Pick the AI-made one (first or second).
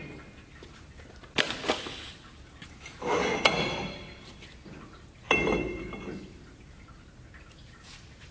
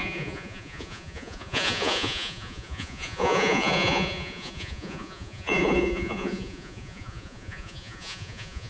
second